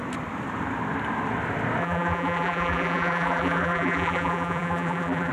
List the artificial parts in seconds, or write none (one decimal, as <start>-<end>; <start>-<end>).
1.8-5.3